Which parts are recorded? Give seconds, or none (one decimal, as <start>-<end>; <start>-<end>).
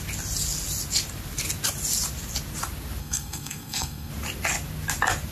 0.0-3.0; 4.1-5.3